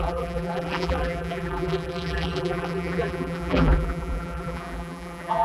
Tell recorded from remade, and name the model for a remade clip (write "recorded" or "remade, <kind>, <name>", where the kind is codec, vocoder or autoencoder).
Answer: remade, vocoder, BigVGAN v2